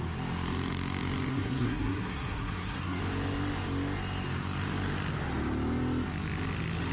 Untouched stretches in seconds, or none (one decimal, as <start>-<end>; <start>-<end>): 0.0-1.3; 3.0-6.9